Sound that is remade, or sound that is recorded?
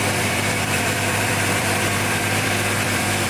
remade